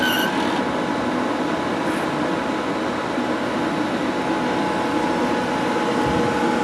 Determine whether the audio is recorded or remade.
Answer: recorded